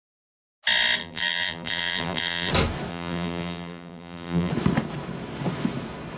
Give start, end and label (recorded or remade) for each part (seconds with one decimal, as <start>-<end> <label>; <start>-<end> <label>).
0.0-1.0 recorded; 1.0-2.5 remade; 2.5-2.9 recorded; 2.9-4.5 remade; 4.5-6.2 recorded